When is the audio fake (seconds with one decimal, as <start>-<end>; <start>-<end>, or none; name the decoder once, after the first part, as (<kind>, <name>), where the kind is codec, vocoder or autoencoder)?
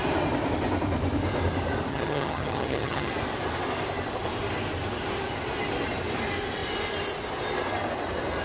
1.9-3.1 (vocoder, HiFi-GAN)